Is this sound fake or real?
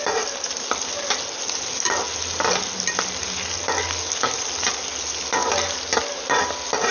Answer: real